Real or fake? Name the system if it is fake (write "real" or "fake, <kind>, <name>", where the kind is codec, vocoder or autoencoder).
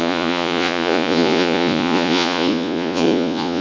fake, vocoder, Vocos